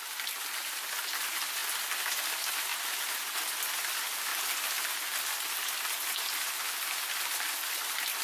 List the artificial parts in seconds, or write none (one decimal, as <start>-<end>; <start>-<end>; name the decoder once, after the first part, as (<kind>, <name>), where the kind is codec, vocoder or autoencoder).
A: none